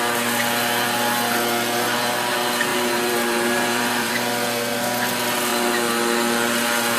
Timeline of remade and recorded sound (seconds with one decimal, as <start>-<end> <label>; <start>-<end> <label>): 0.0-2.7 recorded; 2.7-4.1 remade; 4.1-7.0 recorded